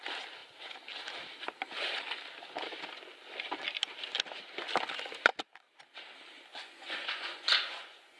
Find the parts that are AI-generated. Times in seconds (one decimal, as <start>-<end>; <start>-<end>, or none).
6.5-8.2